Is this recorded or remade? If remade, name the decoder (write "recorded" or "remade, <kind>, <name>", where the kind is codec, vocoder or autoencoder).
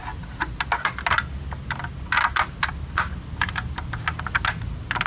recorded